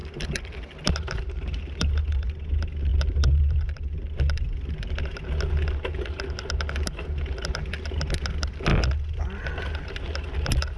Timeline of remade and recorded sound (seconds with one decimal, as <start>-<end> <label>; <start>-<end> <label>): 0.0-10.8 recorded